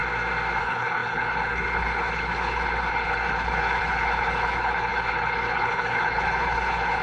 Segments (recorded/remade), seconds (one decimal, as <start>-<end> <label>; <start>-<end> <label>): 0.0-0.6 recorded; 0.6-7.0 remade